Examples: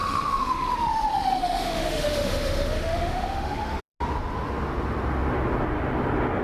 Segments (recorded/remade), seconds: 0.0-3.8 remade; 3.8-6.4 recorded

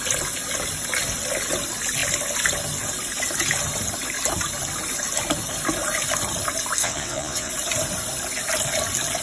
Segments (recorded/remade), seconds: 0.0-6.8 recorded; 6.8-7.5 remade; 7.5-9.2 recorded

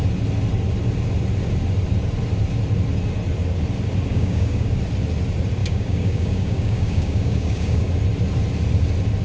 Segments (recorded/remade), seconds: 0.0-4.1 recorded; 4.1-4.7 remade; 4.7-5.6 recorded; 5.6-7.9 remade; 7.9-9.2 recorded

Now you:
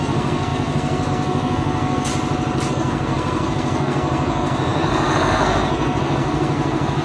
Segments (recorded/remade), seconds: 0.0-2.1 remade; 2.1-2.7 recorded; 2.7-7.0 remade

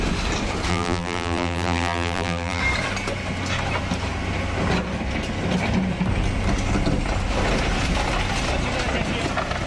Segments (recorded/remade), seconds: 0.0-0.7 recorded; 0.7-2.6 remade; 2.6-9.7 recorded